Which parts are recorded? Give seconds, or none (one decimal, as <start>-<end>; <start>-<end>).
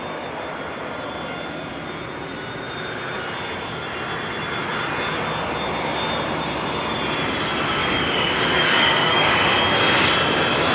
0.0-7.8; 9.3-10.7